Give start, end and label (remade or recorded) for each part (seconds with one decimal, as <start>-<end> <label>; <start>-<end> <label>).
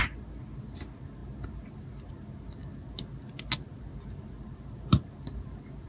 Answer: 0.0-5.9 recorded